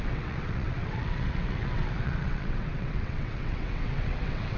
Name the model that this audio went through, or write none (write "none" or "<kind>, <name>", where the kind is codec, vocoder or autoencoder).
vocoder, WaveNeXt